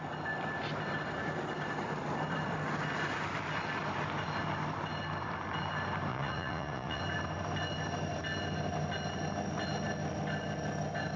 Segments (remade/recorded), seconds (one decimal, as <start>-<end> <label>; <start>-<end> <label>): 0.0-6.1 recorded; 6.1-7.0 remade; 7.0-11.2 recorded